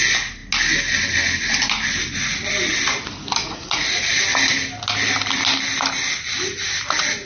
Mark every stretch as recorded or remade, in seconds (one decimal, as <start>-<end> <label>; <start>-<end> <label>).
0.0-3.4 recorded; 3.4-4.1 remade; 4.1-7.3 recorded